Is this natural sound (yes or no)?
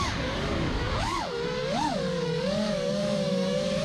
no